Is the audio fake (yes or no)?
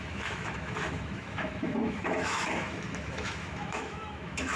yes